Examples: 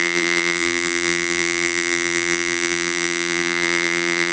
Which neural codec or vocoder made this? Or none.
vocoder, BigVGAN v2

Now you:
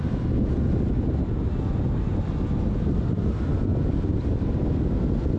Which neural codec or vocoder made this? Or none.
none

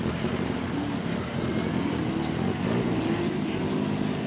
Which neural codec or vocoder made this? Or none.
none